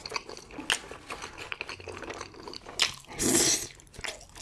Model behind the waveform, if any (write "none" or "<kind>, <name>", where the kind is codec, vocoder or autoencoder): none